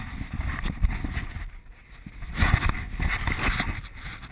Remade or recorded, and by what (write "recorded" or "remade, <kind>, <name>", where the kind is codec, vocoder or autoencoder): recorded